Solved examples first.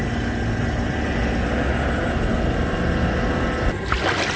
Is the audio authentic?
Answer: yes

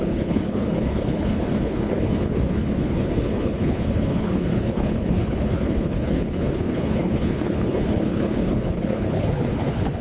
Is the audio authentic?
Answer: no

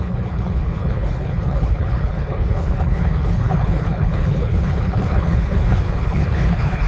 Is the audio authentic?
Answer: no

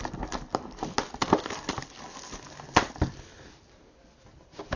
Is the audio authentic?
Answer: yes